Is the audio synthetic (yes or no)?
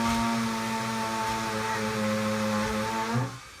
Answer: no